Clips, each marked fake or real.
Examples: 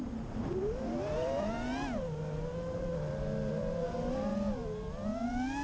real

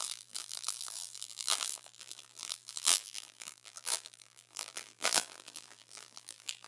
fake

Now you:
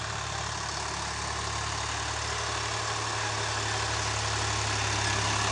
real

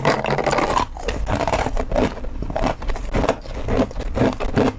real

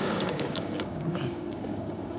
fake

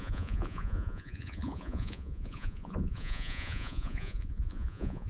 fake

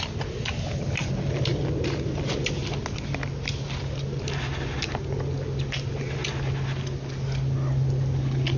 real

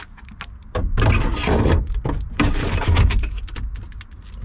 real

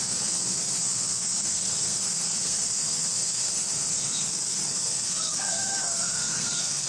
fake